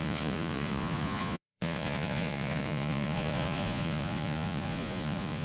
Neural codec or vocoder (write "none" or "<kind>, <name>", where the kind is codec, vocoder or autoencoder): vocoder, Vocos